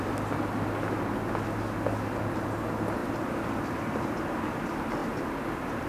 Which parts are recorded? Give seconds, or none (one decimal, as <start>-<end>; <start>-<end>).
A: 0.0-5.9

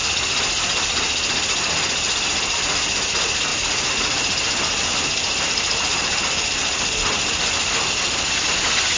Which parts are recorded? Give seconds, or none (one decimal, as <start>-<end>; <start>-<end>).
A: 0.0-9.0